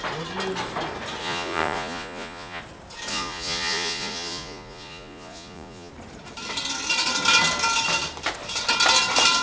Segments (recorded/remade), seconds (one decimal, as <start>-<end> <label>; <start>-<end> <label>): 0.0-1.2 recorded; 1.2-2.6 remade; 2.6-3.1 recorded; 3.1-5.9 remade; 5.9-9.4 recorded